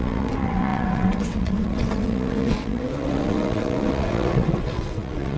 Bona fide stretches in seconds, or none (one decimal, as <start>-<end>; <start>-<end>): none